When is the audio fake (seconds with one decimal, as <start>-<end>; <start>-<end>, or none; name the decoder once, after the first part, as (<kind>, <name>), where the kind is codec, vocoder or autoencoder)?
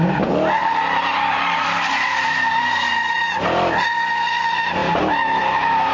0.6-4.1 (vocoder, BigVGAN v2)